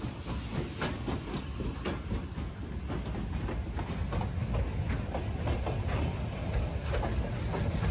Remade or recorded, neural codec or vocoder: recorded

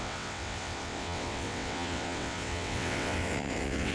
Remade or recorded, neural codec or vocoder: remade, vocoder, WaveNeXt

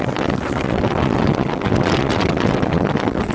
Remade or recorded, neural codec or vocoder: remade, vocoder, WaveNeXt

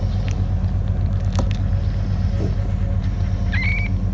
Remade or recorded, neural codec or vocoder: recorded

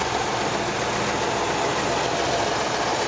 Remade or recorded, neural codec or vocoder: recorded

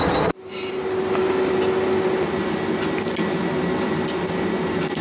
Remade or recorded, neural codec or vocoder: recorded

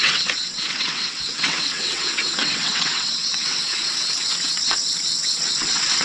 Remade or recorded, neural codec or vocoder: remade, vocoder, WaveNeXt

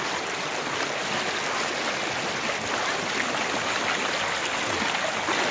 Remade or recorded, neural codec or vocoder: recorded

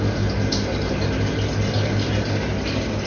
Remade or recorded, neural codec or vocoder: recorded